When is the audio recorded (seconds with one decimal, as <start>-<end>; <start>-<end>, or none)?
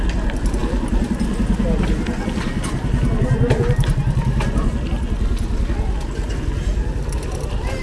0.0-7.8